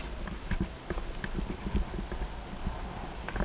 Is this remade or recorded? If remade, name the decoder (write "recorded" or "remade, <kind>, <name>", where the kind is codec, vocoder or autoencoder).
recorded